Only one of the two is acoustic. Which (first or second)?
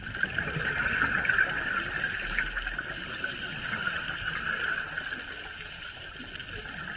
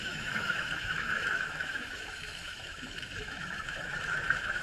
first